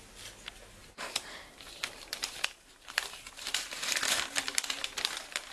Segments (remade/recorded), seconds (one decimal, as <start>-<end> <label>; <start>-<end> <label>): 0.0-0.8 recorded; 0.8-4.1 remade; 4.1-5.5 recorded